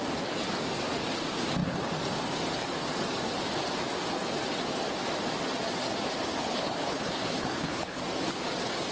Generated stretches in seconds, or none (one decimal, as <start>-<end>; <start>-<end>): 6.4-8.0